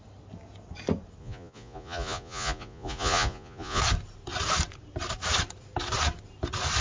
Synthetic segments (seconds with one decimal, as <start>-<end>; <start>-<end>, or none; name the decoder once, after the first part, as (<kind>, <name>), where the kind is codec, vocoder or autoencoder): 1.2-3.8 (vocoder, Vocos)